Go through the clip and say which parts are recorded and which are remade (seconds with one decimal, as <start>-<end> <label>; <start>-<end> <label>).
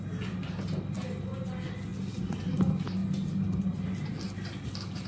0.0-5.1 recorded